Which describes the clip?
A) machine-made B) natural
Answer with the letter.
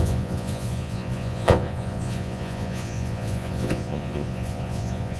A